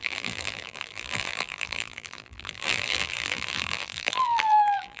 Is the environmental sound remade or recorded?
remade